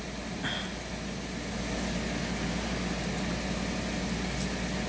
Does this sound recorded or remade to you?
recorded